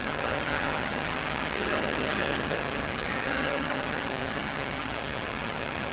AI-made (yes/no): yes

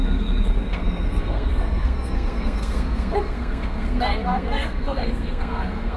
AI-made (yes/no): yes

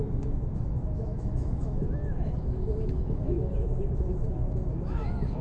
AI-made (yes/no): yes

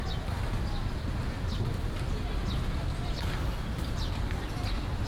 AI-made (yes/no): no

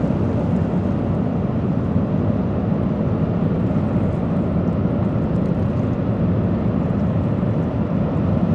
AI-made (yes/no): no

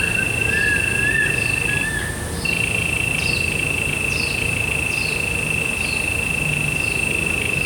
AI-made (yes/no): no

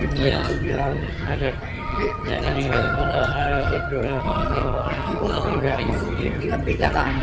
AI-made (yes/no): yes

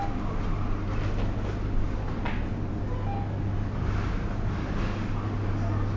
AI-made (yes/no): no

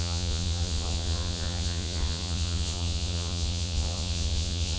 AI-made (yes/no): yes